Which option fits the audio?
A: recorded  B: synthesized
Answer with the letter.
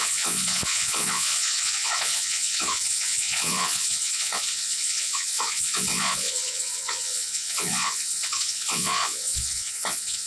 B